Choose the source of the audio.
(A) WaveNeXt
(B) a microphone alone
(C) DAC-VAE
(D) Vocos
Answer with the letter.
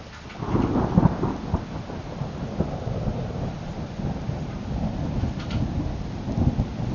B